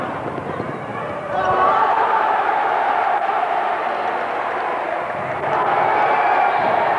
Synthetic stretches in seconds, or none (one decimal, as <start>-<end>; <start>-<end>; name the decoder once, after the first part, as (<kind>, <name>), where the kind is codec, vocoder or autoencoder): 0.9-3.8 (vocoder, BigVGAN v2)